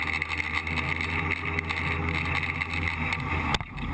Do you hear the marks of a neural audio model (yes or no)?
no